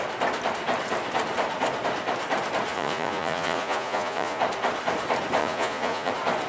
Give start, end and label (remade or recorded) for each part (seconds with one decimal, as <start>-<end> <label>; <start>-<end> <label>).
0.0-2.7 recorded; 2.7-4.4 remade; 4.4-5.4 recorded; 5.4-6.1 remade; 6.1-6.5 recorded